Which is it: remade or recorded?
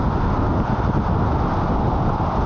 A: recorded